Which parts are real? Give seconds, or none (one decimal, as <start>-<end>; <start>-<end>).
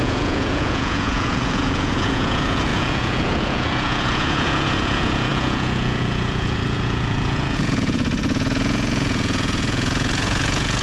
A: none